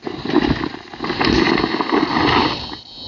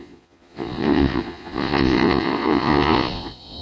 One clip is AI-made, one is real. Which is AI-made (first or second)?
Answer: second